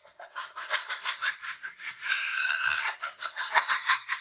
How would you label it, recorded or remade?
remade